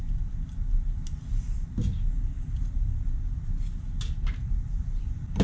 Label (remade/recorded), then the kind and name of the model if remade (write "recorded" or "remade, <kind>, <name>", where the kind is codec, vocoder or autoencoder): recorded